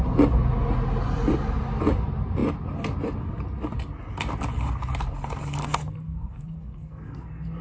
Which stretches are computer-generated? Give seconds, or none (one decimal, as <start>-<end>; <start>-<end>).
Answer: 5.6-7.6